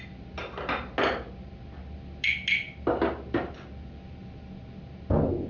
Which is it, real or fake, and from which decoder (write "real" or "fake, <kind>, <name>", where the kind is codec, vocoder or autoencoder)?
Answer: real